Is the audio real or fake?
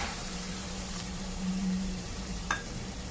fake